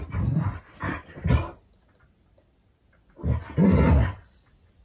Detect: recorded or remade recorded